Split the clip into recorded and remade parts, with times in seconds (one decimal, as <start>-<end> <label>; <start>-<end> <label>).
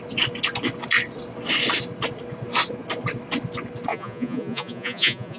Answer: 0.0-3.9 recorded; 3.9-5.4 remade